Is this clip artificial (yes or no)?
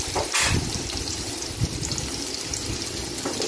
no